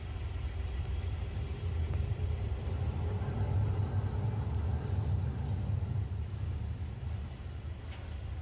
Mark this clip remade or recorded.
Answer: recorded